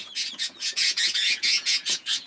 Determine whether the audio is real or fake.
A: fake